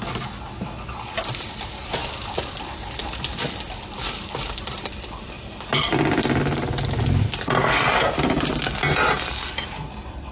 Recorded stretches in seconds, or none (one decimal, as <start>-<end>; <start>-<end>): 0.0-2.0; 6.4-10.3